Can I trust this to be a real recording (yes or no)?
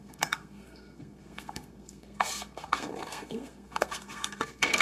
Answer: no